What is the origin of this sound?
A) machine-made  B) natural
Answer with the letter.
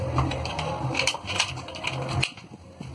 B